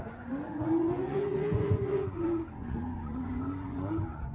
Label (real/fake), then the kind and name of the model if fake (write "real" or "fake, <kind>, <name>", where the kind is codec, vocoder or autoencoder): fake, vocoder, Vocos